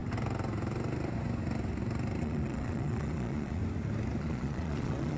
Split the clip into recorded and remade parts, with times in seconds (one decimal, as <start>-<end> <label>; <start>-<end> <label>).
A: 0.0-2.2 recorded; 2.2-3.6 remade; 3.6-4.2 recorded; 4.2-5.2 remade